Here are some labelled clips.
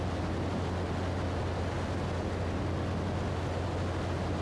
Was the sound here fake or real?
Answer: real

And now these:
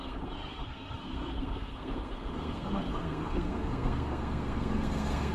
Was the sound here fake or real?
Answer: fake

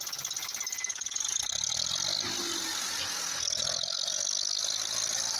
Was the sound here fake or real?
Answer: real